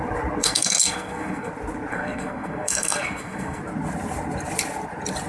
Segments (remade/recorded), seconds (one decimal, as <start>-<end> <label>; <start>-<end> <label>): 0.0-0.4 recorded; 0.4-1.5 remade; 1.5-1.9 recorded; 1.9-3.6 remade; 3.6-5.3 recorded